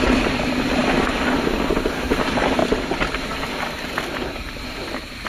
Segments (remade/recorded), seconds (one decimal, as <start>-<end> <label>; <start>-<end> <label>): 0.0-5.3 recorded